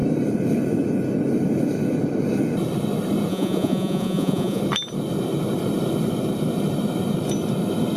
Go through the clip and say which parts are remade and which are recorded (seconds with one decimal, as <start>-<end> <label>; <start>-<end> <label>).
0.0-3.3 recorded; 3.3-4.6 remade; 4.6-8.0 recorded